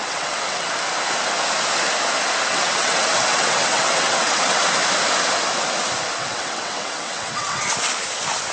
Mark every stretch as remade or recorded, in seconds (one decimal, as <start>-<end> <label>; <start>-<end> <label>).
0.0-0.7 remade; 0.7-2.5 recorded; 2.5-4.6 remade; 4.6-6.2 recorded; 6.2-7.6 remade; 7.6-8.5 recorded